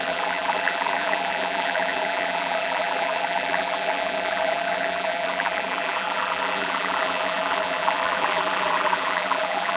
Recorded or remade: remade